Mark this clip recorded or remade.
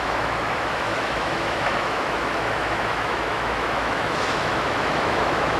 remade